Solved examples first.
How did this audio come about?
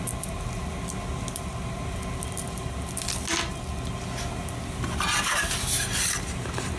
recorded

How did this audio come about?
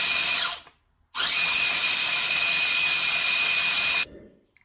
recorded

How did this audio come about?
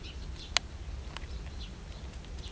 recorded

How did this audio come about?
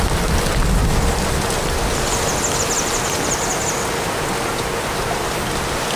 recorded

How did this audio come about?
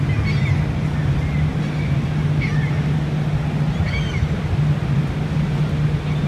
recorded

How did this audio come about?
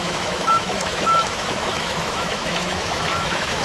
remade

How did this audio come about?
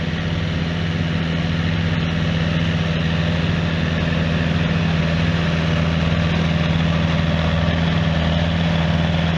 recorded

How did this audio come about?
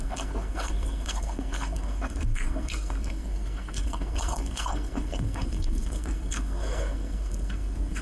remade